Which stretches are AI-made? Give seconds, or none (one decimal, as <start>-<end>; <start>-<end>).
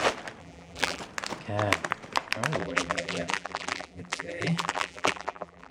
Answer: 0.4-1.0; 2.6-5.7